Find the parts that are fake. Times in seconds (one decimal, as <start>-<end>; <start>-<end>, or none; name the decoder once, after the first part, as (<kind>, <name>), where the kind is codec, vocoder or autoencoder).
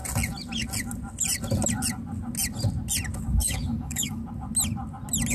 3.2-4.2 (codec, DAC)